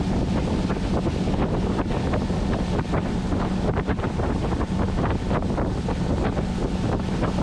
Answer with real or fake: real